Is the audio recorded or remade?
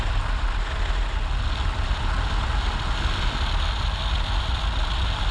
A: recorded